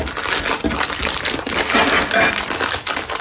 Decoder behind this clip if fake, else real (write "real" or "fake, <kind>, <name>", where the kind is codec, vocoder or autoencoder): real